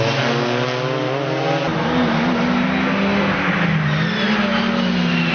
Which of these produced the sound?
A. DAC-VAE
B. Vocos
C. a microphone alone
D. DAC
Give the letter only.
C